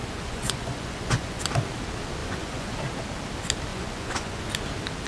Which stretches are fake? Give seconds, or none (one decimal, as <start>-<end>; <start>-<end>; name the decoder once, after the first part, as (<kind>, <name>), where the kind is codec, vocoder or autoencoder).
0.0-1.4 (vocoder, Vocos); 2.2-2.8; 3.7-4.5